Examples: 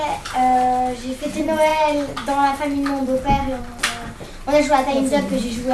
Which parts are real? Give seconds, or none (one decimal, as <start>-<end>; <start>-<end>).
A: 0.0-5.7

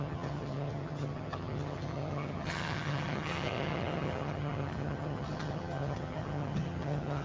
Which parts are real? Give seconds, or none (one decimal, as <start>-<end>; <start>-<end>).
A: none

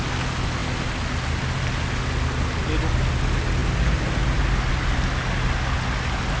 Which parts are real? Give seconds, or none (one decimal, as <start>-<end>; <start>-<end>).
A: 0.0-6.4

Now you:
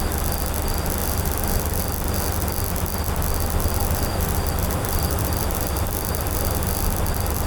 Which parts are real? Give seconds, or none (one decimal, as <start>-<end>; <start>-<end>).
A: 0.0-1.0; 1.8-3.8; 6.8-7.5

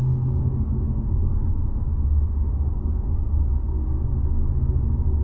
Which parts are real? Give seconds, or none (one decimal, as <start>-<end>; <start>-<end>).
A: 0.0-0.4; 3.5-5.2

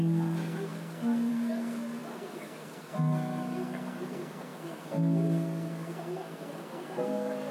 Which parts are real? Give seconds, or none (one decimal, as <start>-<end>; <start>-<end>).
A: none

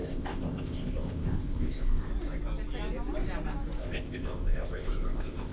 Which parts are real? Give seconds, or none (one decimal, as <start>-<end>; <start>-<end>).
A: 2.1-3.8

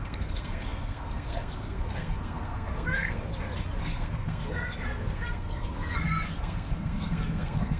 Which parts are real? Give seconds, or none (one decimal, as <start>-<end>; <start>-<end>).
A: 3.3-3.8